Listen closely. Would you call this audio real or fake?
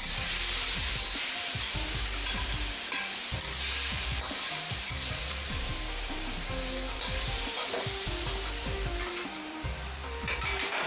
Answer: fake